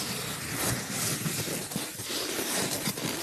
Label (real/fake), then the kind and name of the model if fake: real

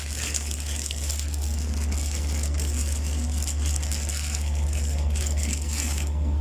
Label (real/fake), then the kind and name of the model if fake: fake, codec, SNAC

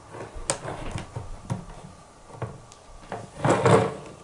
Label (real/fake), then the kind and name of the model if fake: real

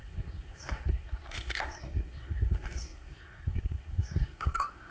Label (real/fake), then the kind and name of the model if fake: fake, codec, SNAC